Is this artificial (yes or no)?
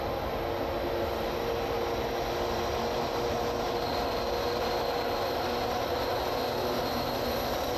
no